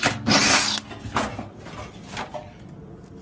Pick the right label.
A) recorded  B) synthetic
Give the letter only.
A